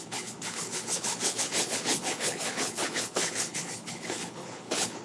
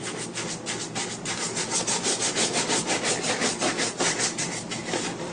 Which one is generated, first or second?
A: first